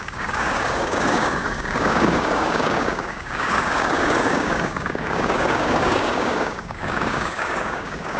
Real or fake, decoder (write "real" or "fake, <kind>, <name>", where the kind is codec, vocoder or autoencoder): fake, codec, DAC